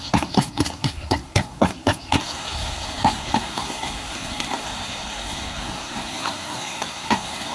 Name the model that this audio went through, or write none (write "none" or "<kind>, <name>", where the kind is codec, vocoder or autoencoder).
codec, SNAC